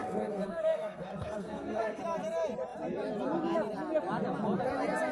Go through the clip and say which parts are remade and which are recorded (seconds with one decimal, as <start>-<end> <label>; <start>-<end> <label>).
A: 0.0-2.0 remade; 2.0-5.1 recorded